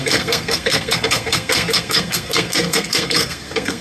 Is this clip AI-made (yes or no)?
yes